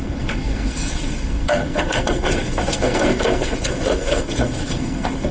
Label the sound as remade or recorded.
remade